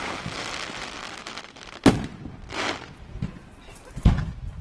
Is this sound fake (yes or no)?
no